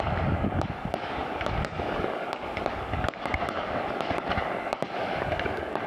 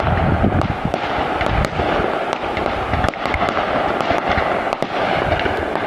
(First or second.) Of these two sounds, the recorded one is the second